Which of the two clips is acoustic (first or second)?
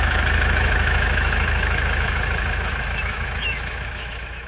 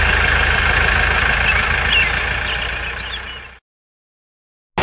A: second